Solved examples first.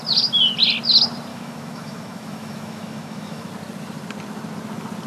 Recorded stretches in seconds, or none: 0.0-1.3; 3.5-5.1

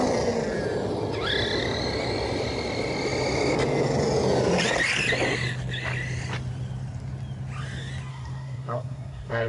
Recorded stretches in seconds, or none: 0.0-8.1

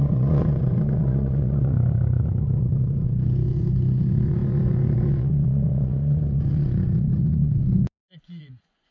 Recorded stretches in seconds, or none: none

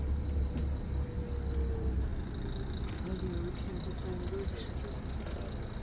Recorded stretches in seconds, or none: 0.0-5.8

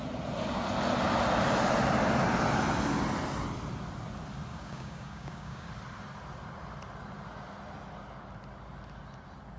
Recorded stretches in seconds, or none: 0.0-4.5; 5.7-9.6